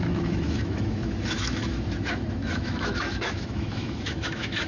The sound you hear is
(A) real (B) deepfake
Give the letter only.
B